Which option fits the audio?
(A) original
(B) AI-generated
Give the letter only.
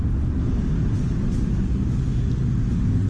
A